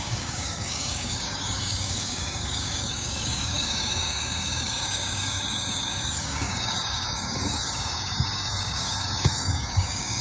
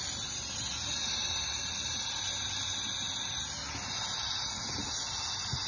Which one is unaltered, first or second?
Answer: second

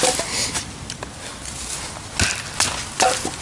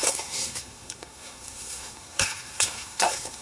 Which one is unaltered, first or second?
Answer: first